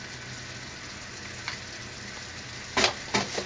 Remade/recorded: recorded